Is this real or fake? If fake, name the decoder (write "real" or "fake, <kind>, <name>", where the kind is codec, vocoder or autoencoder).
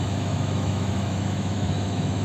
fake, autoencoder, DAC-VAE